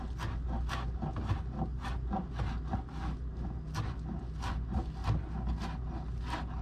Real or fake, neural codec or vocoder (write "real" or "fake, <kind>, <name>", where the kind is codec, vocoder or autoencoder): real